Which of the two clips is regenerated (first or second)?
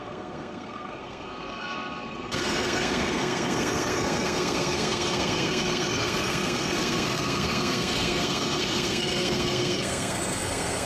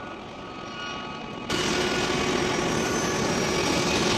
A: first